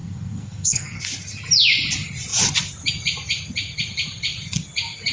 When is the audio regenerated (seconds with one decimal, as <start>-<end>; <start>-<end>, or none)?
0.0-1.0